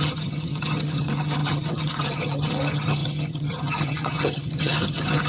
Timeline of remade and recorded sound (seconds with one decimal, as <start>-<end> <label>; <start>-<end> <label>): 0.0-5.3 remade